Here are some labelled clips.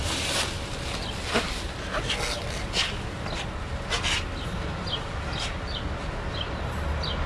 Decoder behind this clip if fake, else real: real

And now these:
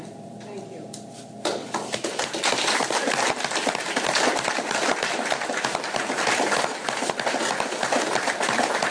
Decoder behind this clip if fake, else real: fake, vocoder, BigVGAN v2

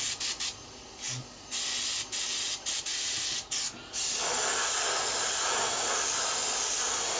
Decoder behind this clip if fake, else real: real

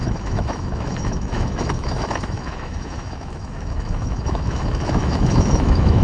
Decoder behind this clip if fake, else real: fake, autoencoder, DAC-VAE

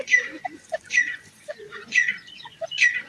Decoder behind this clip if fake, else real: fake, vocoder, Vocos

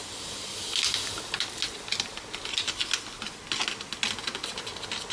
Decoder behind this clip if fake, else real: real